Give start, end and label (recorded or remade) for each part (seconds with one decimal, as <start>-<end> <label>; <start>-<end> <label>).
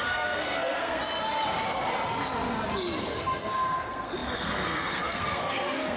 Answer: 0.0-1.0 remade; 1.0-3.0 recorded; 3.0-6.0 remade